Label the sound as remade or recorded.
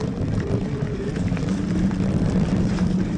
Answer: remade